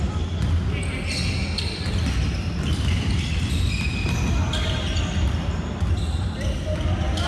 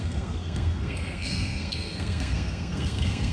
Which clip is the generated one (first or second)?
second